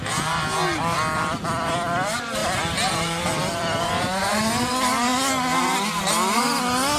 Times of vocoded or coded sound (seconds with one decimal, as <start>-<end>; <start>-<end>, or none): none